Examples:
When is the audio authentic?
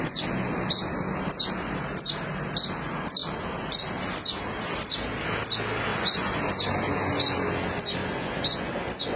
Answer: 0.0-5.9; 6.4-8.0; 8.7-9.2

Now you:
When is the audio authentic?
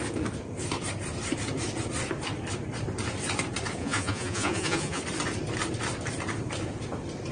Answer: 0.0-3.8; 5.0-7.3